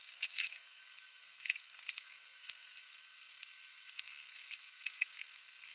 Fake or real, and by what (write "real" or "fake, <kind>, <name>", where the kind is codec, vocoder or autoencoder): fake, codec, SNAC